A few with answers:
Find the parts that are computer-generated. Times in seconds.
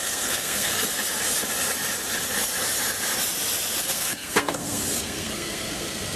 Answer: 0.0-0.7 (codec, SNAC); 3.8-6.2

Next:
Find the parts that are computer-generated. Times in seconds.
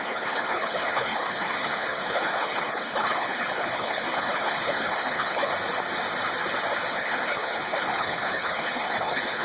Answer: 0.0-5.5 (codec, HILCodec); 6.9-9.4